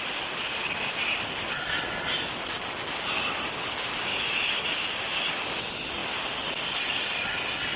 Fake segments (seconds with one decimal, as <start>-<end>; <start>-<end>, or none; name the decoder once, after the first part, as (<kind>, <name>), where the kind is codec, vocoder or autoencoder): 4.1-5.3 (autoencoder, DAC-VAE)